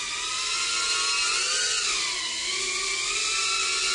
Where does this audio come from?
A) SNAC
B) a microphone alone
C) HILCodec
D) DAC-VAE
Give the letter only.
B